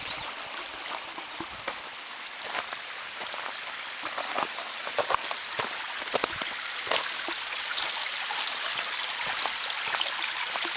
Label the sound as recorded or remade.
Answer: recorded